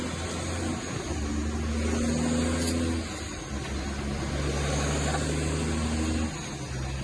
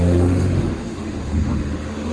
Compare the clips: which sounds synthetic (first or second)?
second